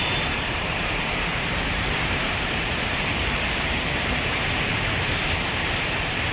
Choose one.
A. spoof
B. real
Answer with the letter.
A